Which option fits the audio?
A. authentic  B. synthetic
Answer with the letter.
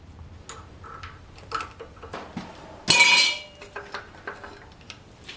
A